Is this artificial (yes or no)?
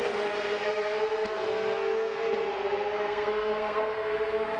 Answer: yes